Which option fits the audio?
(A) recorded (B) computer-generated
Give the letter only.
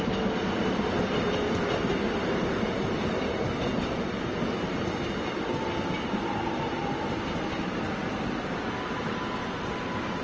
A